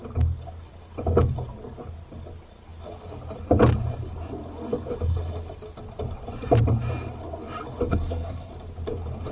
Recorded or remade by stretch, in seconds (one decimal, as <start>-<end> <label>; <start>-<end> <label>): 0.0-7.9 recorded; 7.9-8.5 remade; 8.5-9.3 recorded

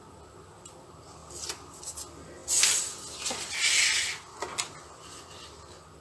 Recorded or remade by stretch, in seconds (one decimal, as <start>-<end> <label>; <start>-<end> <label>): 0.0-1.2 recorded; 1.2-1.8 remade; 1.8-6.0 recorded

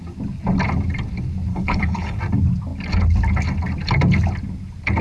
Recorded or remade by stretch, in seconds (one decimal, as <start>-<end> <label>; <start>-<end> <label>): 0.0-1.5 recorded; 1.5-2.2 remade; 2.2-5.0 recorded